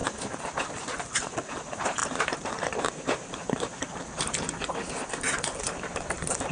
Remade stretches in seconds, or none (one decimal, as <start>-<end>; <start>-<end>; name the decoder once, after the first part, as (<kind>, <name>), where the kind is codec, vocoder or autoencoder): 0.7-4.0 (vocoder, BigVGAN v2); 5.6-6.5